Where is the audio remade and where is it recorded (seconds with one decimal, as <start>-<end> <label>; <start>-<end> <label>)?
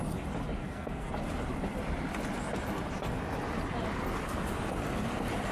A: 0.0-0.6 recorded; 0.6-1.1 remade; 1.1-5.5 recorded